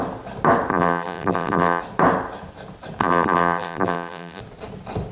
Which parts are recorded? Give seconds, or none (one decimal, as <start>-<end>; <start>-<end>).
0.0-0.7; 1.8-3.0; 4.4-5.1